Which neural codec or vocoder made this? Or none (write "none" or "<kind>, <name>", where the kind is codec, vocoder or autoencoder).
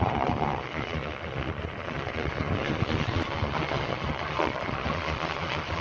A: vocoder, Vocos